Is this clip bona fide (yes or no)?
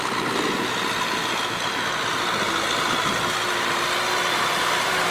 yes